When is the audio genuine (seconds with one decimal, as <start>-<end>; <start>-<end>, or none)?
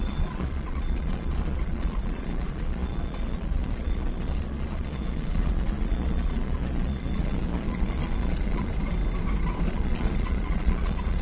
8.7-9.7